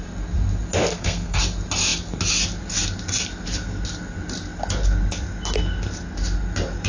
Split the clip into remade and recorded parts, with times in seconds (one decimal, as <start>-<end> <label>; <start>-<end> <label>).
0.0-0.9 recorded; 0.9-1.4 remade; 1.4-6.9 recorded